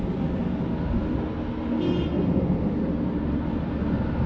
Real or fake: real